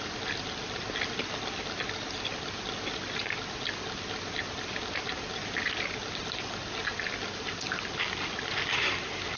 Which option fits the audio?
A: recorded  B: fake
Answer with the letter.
A